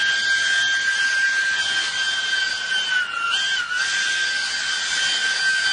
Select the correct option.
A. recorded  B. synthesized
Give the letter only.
A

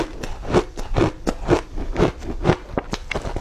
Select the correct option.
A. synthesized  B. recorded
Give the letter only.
B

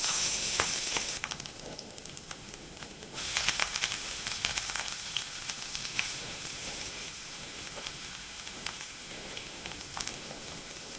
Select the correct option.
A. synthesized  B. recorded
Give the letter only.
A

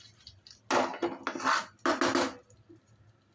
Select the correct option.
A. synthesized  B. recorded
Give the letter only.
B